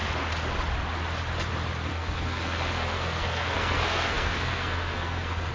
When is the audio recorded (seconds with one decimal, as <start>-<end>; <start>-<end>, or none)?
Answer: 0.0-1.9